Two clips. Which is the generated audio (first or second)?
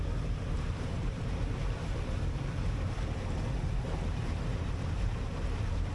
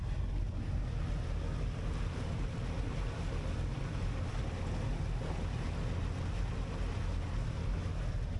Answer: first